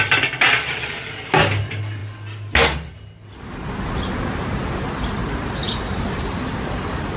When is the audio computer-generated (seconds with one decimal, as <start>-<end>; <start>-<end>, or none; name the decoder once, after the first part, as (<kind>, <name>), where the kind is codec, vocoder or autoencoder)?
0.0-2.0 (vocoder, BigVGAN v2); 4.2-5.2; 5.8-7.2